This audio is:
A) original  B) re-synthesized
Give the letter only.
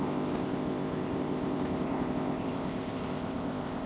B